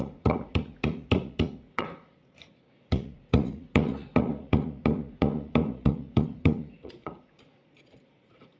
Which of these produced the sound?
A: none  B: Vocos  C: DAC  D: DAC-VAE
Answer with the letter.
B